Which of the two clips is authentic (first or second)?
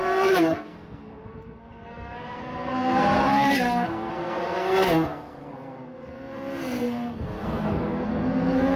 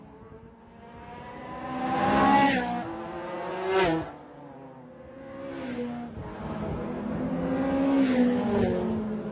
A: second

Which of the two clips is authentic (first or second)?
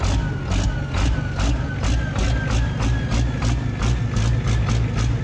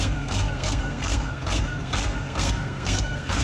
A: first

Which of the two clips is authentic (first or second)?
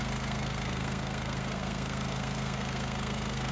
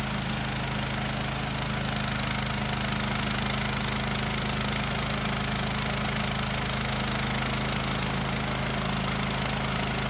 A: second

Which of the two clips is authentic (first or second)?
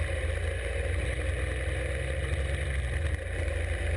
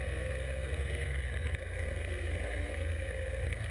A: first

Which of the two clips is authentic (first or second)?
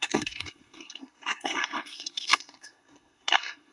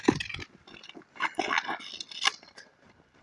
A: second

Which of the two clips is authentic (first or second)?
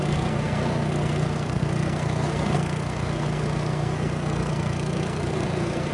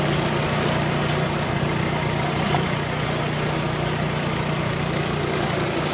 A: second